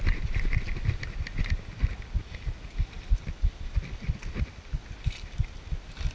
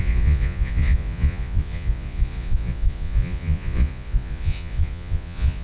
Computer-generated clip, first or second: second